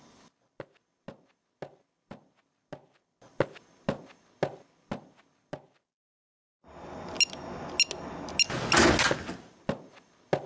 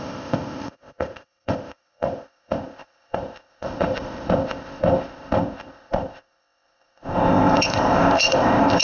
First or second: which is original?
first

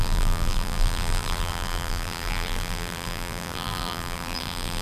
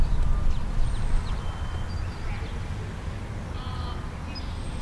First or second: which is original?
second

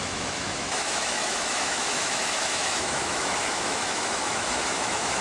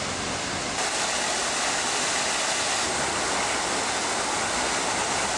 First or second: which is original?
second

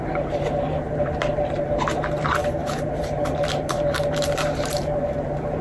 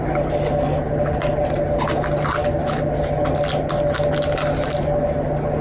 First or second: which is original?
second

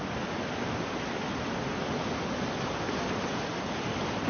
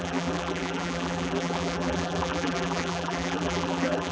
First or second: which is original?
first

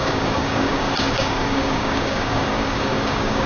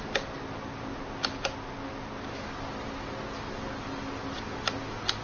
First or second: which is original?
second